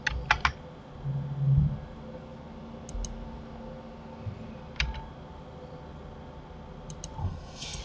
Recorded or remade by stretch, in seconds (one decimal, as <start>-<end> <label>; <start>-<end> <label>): 0.0-7.2 recorded; 7.2-7.8 remade